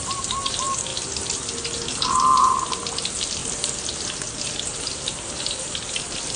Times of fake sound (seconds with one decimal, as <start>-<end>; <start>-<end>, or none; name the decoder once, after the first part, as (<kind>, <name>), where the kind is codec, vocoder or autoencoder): 0.0-0.9 (vocoder, BigVGAN v2); 2.2-3.4; 4.8-6.4